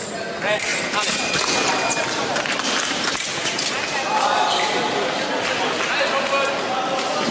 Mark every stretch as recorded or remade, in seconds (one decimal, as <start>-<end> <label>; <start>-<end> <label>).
0.0-7.3 recorded